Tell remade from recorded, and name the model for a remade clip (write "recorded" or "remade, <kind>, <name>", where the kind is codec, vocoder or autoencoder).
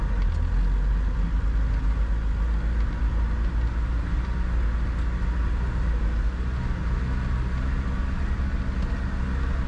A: recorded